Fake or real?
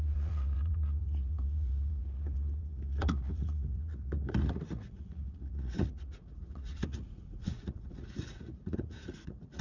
fake